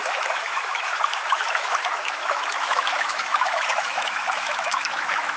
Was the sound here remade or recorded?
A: remade